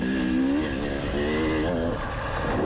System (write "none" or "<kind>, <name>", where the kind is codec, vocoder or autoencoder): none